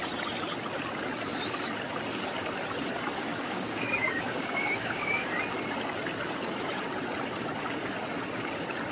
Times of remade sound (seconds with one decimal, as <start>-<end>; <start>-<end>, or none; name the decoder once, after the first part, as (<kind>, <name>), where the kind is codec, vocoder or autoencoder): 3.3-5.3 (codec, DAC)